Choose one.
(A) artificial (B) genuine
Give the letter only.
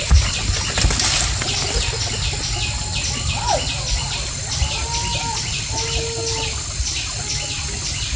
B